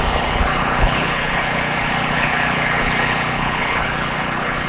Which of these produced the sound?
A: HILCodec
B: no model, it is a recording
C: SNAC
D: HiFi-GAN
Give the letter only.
A